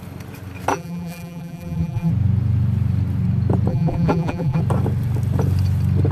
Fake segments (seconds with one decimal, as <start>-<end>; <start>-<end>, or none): 0.7-2.1; 3.7-4.6